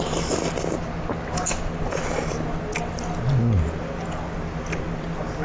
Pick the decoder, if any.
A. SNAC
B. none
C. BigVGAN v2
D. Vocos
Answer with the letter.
B